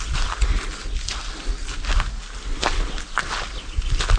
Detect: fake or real real